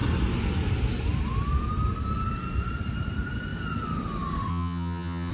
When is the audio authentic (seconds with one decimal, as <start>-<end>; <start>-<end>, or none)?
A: 0.0-4.5